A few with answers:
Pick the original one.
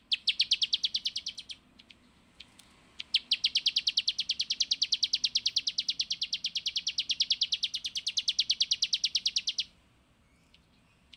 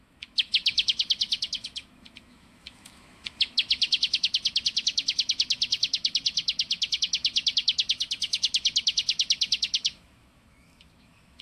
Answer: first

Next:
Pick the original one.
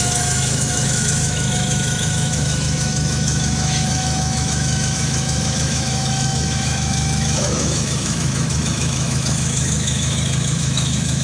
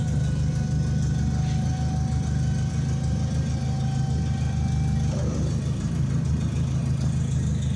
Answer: second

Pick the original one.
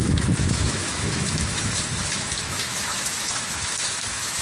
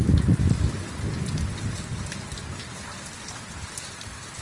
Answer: second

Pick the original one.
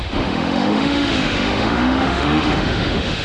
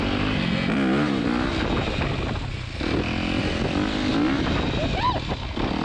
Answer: second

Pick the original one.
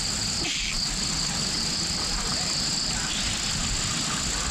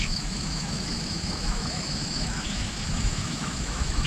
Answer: first